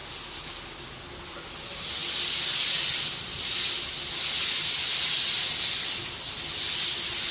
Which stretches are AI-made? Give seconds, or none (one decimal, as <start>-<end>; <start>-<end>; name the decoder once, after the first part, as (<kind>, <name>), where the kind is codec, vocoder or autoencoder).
none